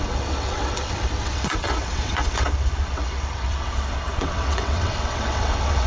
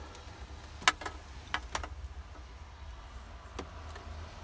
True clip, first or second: second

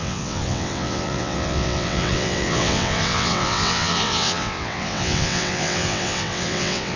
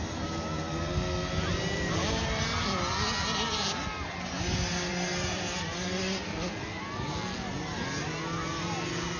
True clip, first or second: second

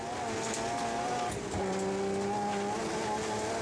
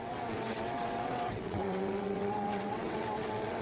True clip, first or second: first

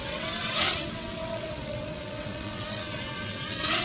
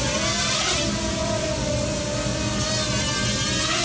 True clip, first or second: second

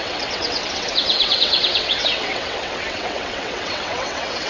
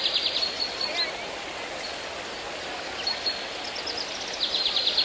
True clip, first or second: second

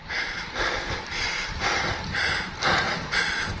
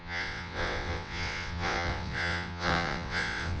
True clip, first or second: first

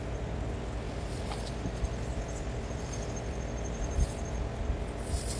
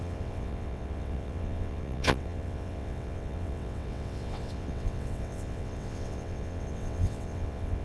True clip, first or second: first